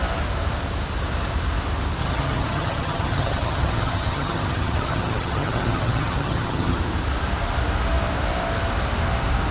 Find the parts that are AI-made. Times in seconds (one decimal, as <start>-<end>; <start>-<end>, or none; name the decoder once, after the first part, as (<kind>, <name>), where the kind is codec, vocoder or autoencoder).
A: 2.0-6.8 (vocoder, HiFi-GAN)